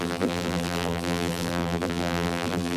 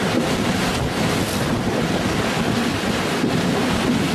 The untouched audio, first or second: second